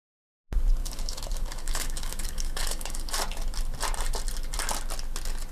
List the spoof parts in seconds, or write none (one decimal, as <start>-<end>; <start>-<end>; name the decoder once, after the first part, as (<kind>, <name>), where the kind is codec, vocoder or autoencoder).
0.8-3.1 (codec, DAC)